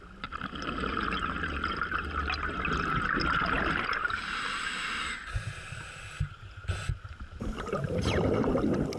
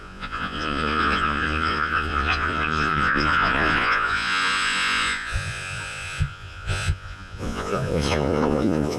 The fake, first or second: second